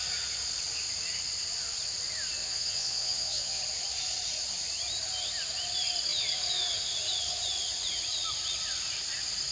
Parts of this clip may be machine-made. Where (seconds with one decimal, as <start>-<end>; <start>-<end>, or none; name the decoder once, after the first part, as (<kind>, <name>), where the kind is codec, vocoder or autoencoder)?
2.4-3.6 (vocoder, WaveNeXt)

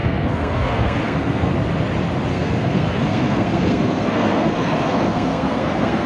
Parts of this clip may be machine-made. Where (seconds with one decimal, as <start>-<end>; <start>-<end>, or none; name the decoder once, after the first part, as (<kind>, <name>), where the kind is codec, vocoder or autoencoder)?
0.0-1.5 (codec, SNAC); 2.3-6.1

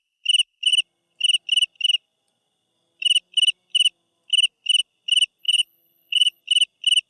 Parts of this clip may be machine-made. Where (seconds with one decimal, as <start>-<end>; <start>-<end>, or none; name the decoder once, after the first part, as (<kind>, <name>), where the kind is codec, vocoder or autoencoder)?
5.4-6.4 (codec, HILCodec)

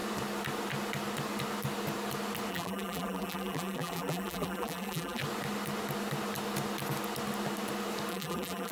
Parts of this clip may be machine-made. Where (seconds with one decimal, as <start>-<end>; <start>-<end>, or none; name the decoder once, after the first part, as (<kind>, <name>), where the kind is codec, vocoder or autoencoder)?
2.5-5.2 (vocoder, BigVGAN v2); 8.1-8.7